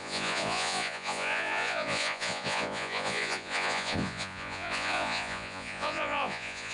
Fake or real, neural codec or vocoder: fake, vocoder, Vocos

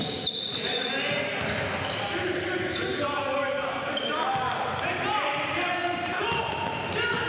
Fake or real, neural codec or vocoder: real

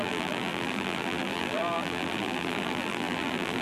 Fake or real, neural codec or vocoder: fake, vocoder, BigVGAN v2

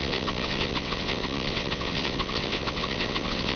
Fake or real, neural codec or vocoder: fake, vocoder, WaveNeXt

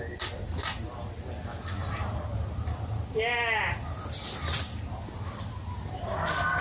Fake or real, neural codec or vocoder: real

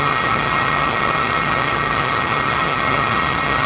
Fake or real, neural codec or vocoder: fake, vocoder, HiFi-GAN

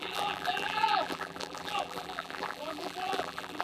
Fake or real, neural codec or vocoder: fake, vocoder, BigVGAN v2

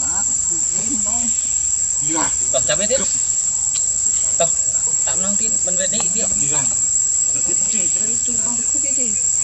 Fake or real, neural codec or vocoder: real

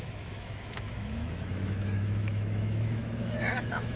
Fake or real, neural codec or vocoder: fake, autoencoder, DAC-VAE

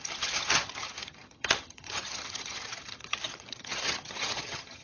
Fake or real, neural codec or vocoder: fake, vocoder, HiFi-GAN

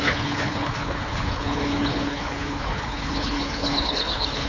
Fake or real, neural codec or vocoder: fake, codec, HILCodec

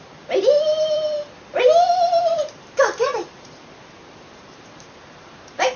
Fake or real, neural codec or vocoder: fake, vocoder, BigVGAN v2